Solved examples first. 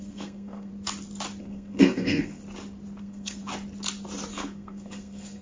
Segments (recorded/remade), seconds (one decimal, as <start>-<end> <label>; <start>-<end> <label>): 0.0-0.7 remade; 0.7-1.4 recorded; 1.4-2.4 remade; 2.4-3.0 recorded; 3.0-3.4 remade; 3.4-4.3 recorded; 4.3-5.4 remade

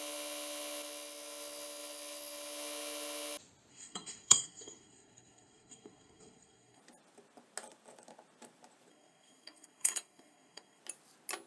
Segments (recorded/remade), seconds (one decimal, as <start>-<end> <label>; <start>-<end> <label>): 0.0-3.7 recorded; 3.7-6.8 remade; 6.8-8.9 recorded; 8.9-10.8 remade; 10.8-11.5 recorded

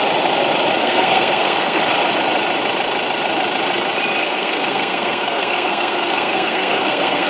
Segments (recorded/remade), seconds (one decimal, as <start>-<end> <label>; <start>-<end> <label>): 0.0-0.8 recorded; 0.8-1.8 remade; 1.8-4.2 recorded; 4.2-7.3 remade